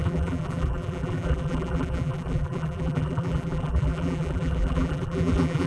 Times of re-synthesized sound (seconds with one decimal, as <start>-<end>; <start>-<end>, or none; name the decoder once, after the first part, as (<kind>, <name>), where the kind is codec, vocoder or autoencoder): 0.0-5.7 (vocoder, BigVGAN v2)